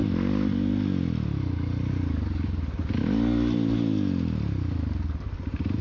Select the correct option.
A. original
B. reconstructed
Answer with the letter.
A